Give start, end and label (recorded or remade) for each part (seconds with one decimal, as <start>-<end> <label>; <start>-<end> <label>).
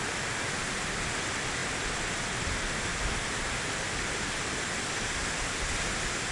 0.0-0.6 recorded; 0.6-1.2 remade; 1.2-6.3 recorded